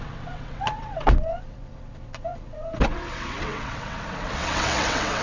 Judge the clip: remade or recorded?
remade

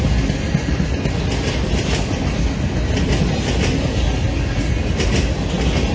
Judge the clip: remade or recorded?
recorded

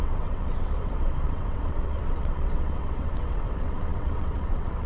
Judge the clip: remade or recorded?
remade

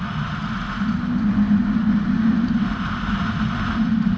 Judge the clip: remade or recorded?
recorded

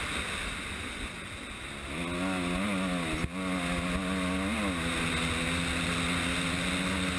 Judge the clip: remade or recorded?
recorded